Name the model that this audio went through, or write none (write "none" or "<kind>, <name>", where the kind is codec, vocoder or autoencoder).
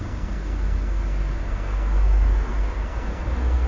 codec, SNAC